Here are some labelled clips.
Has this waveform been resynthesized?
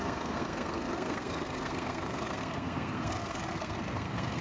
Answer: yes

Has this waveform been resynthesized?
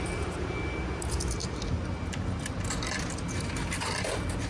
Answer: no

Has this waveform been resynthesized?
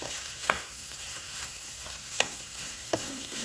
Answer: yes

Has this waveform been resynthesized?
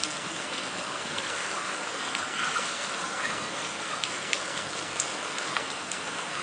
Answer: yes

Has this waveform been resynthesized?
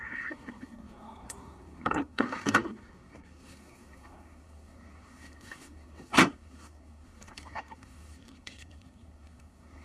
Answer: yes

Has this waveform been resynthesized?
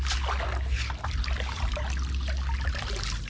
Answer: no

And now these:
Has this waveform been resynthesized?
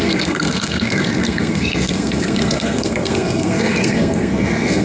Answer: yes